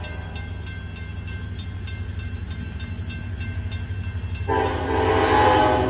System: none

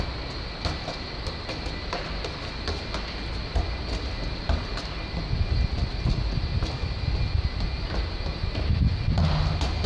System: none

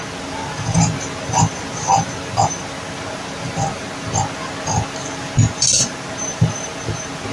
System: none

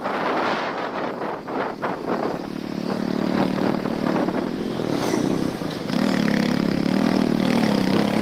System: vocoder, BigVGAN v2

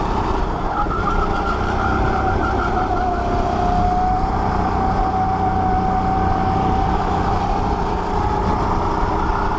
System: none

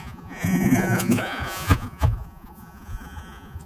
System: vocoder, Vocos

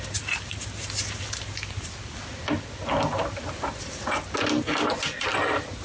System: none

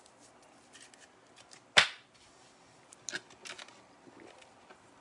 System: none